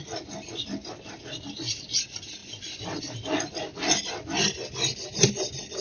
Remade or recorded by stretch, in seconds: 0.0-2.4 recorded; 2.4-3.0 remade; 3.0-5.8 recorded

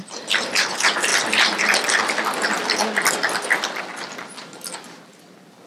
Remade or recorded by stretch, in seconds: 0.0-1.1 recorded; 1.1-3.8 remade; 3.8-5.7 recorded

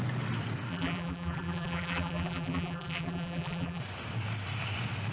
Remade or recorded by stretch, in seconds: 0.0-0.7 recorded; 0.7-3.8 remade; 3.8-5.1 recorded

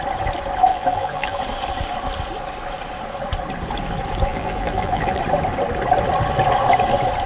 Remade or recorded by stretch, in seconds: 0.0-0.7 recorded; 0.7-1.4 remade; 1.4-4.3 recorded; 4.3-5.2 remade; 5.2-7.3 recorded

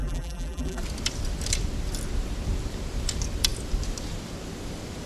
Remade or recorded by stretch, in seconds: 0.0-0.8 remade; 0.8-5.1 recorded

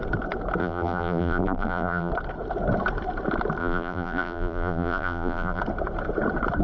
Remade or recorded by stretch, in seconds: 0.0-0.6 recorded; 0.6-2.1 remade; 2.1-3.6 recorded; 3.6-5.6 remade; 5.6-6.6 recorded